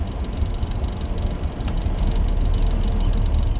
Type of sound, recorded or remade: recorded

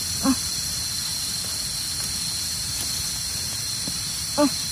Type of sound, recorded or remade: recorded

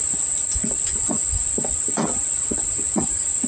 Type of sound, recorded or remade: recorded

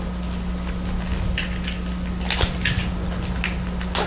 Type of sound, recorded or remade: recorded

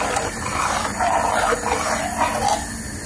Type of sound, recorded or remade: recorded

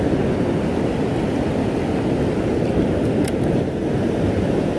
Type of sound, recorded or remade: recorded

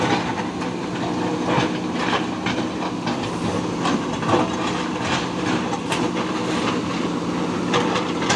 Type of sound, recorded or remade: recorded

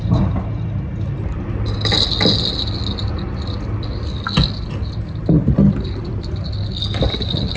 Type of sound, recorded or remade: recorded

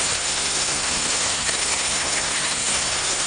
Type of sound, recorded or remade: remade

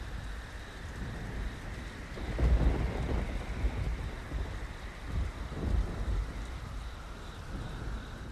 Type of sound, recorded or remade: recorded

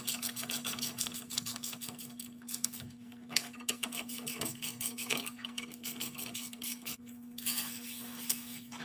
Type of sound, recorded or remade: remade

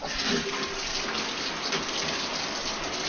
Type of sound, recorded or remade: recorded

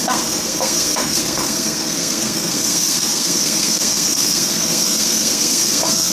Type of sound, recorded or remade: remade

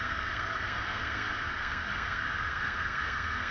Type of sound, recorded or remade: remade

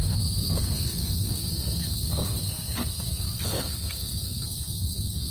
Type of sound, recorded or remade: remade